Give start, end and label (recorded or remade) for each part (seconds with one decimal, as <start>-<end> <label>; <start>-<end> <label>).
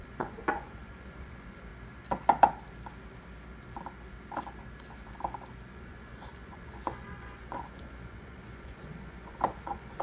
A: 0.0-1.7 remade; 1.7-5.7 recorded; 5.7-10.0 remade